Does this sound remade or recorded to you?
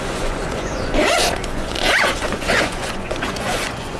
remade